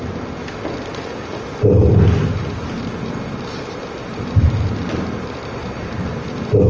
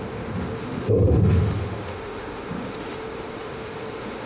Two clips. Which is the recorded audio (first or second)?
first